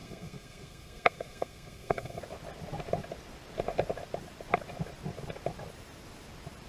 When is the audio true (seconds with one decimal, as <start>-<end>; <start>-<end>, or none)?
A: 2.2-6.7